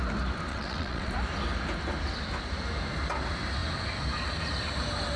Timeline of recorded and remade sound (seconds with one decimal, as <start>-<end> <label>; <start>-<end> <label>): 0.0-0.5 recorded; 0.5-1.1 remade; 1.1-5.2 recorded